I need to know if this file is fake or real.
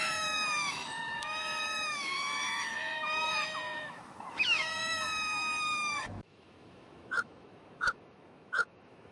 fake